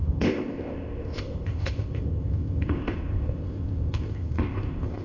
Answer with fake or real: fake